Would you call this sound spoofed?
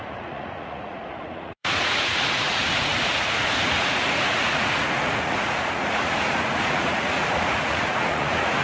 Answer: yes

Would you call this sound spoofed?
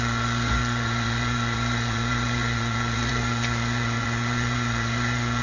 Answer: yes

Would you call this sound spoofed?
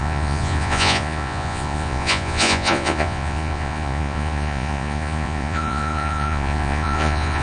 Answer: yes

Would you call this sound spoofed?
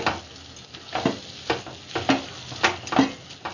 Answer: no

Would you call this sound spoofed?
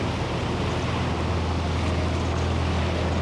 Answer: no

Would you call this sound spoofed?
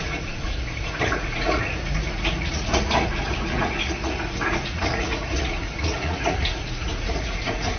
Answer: yes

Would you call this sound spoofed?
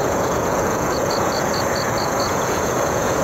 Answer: yes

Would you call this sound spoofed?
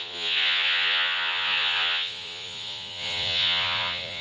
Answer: yes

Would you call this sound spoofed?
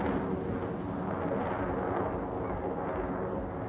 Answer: no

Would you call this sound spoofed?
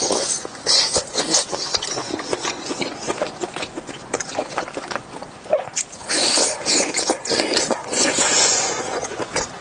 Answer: yes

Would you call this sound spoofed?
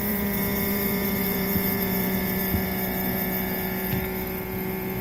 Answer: yes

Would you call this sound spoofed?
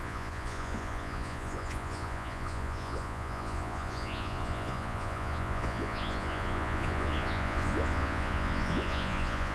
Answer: yes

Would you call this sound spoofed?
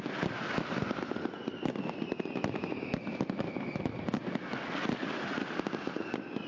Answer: no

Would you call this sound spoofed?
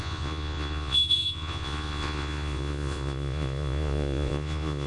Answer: yes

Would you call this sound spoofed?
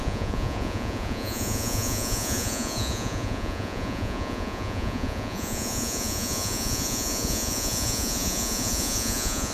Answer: yes